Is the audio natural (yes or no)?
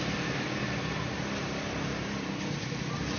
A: yes